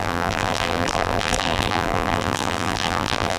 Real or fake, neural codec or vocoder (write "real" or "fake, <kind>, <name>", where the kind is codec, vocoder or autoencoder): fake, vocoder, BigVGAN v2